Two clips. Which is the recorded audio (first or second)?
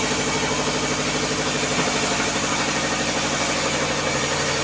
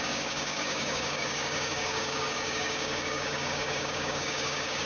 first